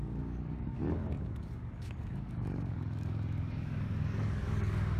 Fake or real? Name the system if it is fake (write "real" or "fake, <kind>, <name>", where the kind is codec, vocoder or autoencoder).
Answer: fake, codec, DAC